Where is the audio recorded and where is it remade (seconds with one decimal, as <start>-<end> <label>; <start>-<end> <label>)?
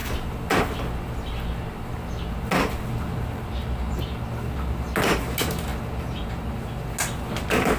0.0-7.8 recorded